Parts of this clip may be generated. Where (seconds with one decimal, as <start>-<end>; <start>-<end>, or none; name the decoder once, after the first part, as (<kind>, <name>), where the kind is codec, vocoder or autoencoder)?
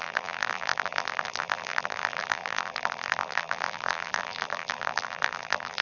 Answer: 0.0-5.8 (vocoder, BigVGAN v2)